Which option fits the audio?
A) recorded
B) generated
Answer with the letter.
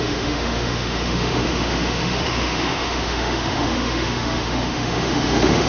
B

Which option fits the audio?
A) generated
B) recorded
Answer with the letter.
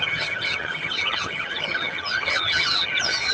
A